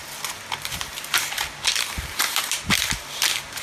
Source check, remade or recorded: recorded